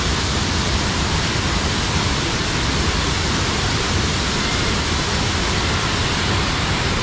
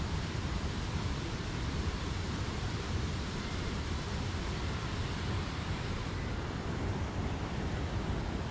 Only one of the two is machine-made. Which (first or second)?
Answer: second